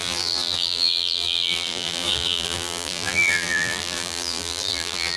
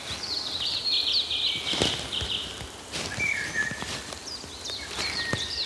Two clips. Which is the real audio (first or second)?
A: second